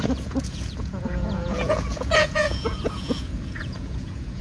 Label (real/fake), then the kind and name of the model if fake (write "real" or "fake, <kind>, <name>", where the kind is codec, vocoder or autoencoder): fake, vocoder, Vocos